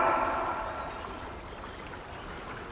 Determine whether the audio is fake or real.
real